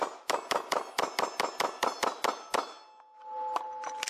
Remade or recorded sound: recorded